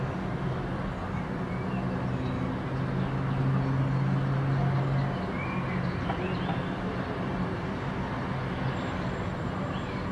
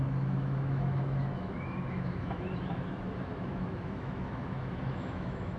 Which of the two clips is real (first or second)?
first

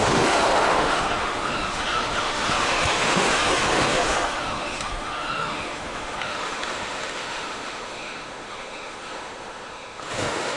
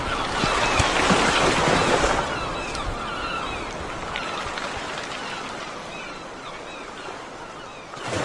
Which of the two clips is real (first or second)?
second